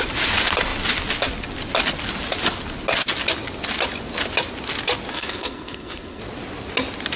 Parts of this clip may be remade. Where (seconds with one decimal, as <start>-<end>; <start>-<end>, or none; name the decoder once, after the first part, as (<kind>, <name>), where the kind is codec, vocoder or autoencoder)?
5.1-6.2 (codec, SNAC)